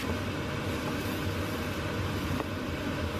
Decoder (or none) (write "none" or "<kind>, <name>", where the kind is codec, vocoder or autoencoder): none